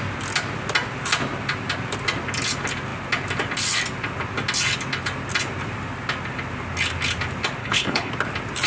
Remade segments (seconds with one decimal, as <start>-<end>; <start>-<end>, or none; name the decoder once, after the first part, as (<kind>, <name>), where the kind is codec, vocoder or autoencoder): 7.6-8.1 (codec, HILCodec)